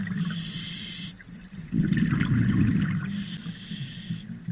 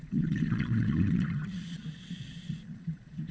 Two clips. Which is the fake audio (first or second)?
second